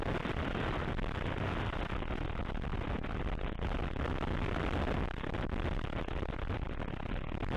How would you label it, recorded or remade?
recorded